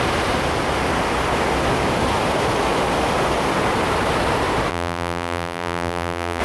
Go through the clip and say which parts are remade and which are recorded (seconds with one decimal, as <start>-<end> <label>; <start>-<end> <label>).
0.0-4.7 recorded; 4.7-6.4 remade